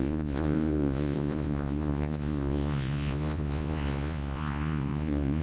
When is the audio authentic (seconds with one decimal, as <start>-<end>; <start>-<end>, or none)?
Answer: none